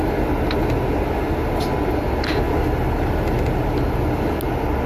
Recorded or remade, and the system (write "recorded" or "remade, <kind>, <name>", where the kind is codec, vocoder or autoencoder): recorded